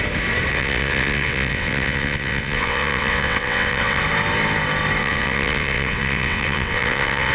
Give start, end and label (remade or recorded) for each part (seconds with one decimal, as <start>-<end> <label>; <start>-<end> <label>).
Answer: 0.0-0.5 recorded; 0.5-4.0 remade; 4.0-5.0 recorded; 5.0-7.3 remade